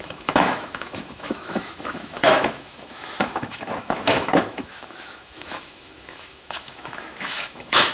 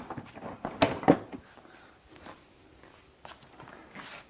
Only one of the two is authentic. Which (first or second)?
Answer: second